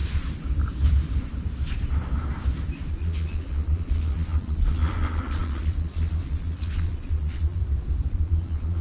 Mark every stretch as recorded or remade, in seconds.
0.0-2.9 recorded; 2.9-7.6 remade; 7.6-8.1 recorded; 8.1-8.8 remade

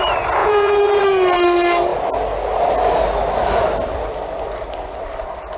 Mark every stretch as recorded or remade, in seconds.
0.0-0.4 recorded; 0.4-1.0 remade; 1.0-5.6 recorded

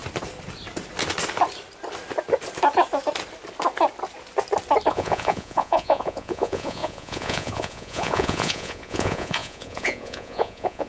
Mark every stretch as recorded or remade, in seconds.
0.0-4.9 recorded; 4.9-10.9 remade

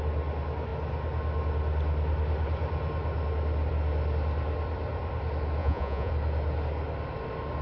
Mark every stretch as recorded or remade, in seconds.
0.0-5.6 recorded; 5.6-6.1 remade; 6.1-7.6 recorded

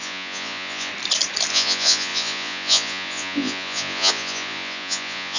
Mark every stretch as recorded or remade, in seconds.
0.0-0.9 remade; 0.9-1.5 recorded; 1.5-5.4 remade

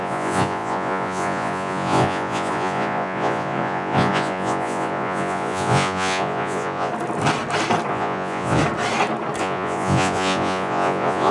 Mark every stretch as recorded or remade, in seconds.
0.0-6.9 remade; 6.9-7.9 recorded; 7.9-8.6 remade; 8.6-9.4 recorded; 9.4-11.3 remade